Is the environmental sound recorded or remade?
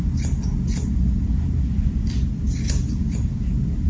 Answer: recorded